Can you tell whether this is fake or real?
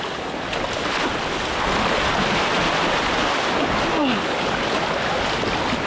real